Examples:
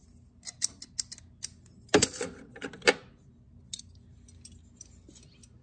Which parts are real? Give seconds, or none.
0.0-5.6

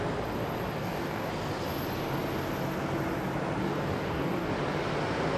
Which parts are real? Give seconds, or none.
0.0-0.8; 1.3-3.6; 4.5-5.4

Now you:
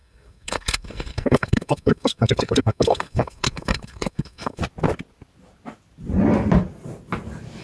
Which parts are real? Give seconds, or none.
4.6-7.6

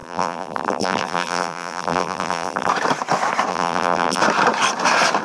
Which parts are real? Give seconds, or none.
2.7-3.5; 4.2-5.2

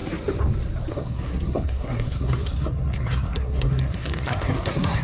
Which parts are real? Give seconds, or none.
0.0-0.9

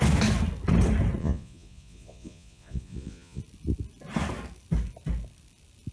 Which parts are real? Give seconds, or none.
0.0-1.2; 3.4-5.9